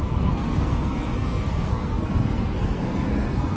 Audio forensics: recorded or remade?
remade